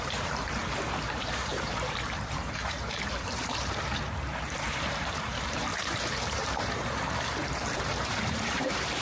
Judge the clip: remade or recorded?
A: remade